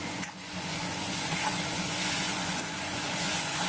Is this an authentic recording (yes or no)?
no